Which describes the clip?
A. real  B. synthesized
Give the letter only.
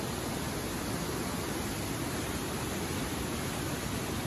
A